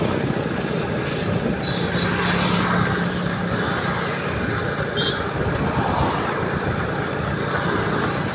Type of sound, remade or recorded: recorded